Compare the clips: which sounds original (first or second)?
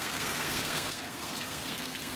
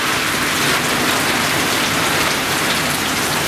second